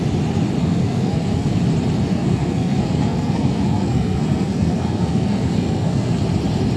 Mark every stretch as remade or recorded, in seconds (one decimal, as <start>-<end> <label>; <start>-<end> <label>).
0.0-0.6 recorded; 0.6-1.6 remade; 1.6-2.1 recorded; 2.1-6.2 remade; 6.2-6.8 recorded